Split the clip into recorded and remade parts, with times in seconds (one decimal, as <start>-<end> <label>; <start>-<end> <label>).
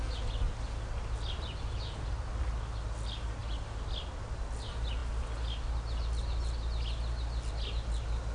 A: 0.0-8.3 recorded